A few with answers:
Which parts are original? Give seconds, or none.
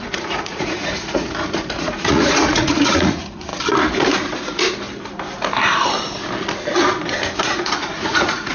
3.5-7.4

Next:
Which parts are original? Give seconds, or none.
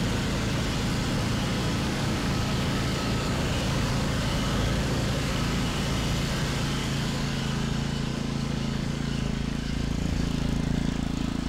0.0-1.6; 5.8-6.8; 7.4-8.1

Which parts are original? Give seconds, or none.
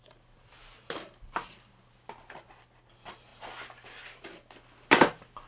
0.0-5.5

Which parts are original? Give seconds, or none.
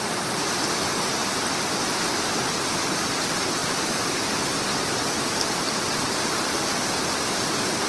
0.0-4.7; 6.6-7.9